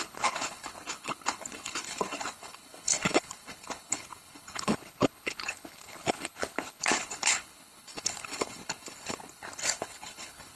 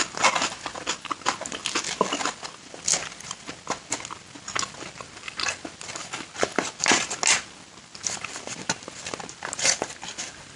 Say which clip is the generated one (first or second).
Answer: first